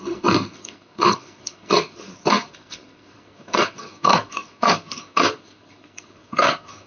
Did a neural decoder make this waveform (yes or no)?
yes